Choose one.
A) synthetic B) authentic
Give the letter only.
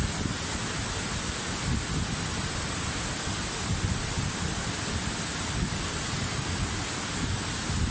B